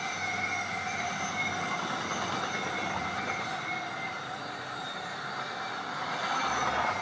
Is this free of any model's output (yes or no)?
yes